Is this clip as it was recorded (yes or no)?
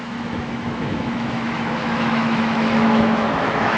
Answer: no